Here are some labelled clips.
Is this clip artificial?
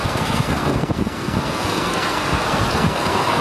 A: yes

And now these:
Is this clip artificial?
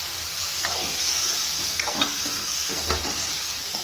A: yes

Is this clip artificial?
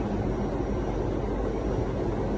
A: no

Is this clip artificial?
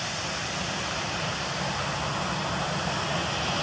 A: no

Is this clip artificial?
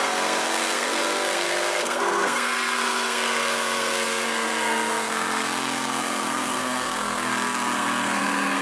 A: yes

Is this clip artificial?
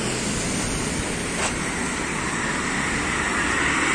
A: no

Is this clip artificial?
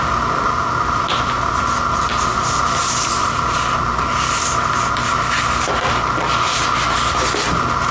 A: no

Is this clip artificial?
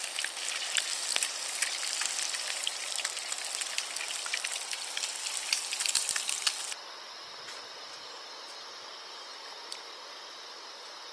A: no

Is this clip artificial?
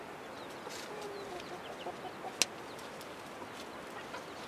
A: no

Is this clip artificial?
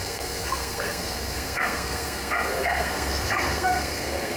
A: yes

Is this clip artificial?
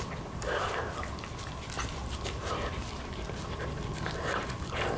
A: no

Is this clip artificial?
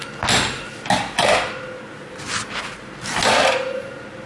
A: no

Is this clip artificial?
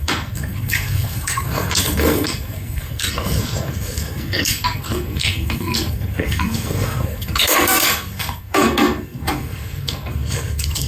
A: yes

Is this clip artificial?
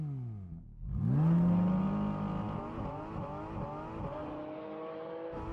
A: no